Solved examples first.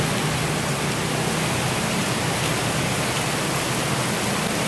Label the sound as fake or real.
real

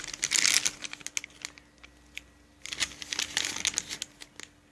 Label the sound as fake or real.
real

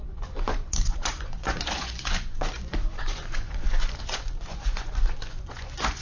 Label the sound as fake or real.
fake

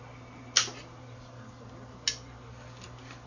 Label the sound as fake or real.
real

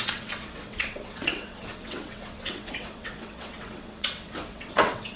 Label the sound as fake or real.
fake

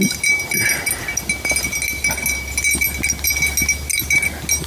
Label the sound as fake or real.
real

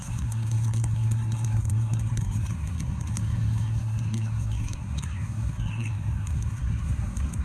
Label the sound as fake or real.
fake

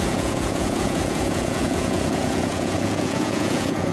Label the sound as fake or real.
fake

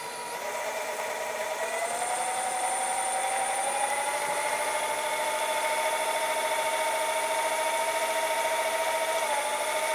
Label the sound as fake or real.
fake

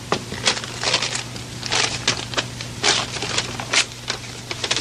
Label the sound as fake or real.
real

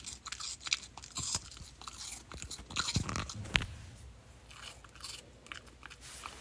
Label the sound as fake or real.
real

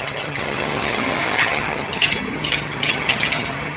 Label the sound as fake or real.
fake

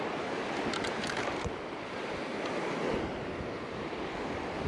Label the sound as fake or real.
real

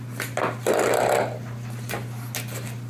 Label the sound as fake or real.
real